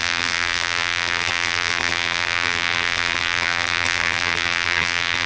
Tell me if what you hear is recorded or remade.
remade